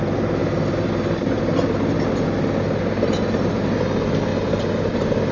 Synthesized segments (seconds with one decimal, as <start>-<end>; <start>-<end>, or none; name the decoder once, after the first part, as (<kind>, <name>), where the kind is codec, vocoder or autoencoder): none